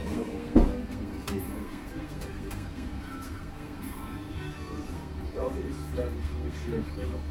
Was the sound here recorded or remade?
remade